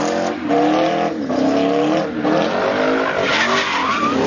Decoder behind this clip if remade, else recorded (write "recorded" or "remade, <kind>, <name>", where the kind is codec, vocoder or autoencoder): recorded